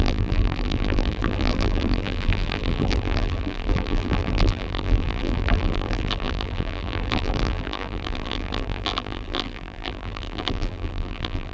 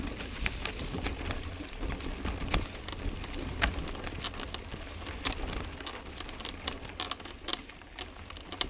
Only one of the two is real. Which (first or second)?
second